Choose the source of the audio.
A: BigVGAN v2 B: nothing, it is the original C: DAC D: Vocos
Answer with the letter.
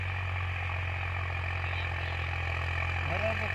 B